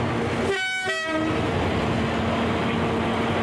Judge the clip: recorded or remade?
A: recorded